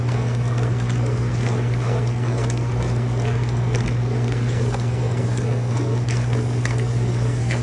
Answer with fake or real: fake